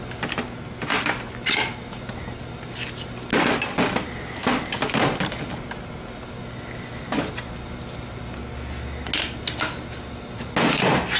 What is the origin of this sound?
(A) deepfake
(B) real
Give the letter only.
B